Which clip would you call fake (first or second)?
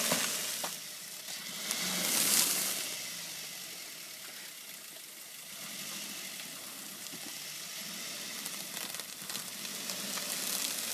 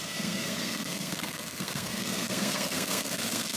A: second